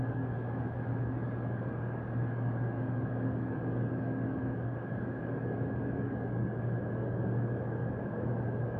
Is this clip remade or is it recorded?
remade